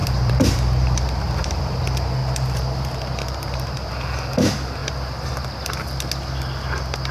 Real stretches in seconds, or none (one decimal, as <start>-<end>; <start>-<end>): 1.8-2.2; 3.9-7.1